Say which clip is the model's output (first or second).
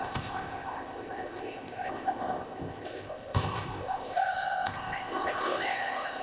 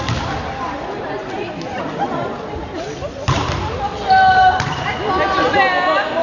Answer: first